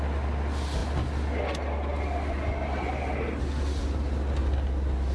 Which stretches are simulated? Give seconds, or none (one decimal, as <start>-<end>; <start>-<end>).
none